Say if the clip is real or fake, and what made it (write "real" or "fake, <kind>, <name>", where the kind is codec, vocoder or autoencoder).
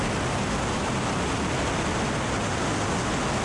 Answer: real